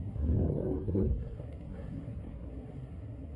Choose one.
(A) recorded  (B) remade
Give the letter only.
B